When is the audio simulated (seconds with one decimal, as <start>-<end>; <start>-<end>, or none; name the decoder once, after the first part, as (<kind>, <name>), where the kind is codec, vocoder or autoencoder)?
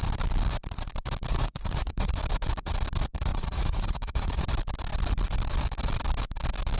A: 1.3-2.1 (vocoder, Vocos); 3.3-4.4